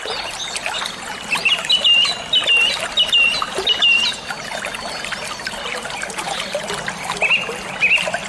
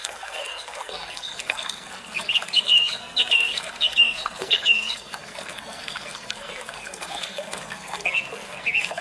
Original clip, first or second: first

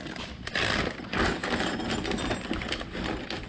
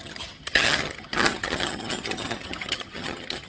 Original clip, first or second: first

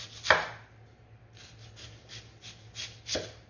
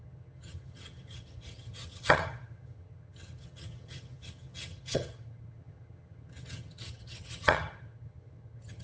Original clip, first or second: first